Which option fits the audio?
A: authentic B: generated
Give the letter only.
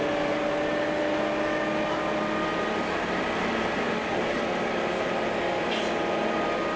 A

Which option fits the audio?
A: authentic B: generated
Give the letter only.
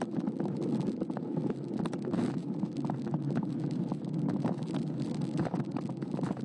A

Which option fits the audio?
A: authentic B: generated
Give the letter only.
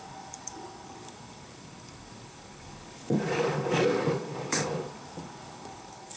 B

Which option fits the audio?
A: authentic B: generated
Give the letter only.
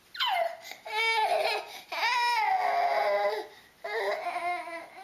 A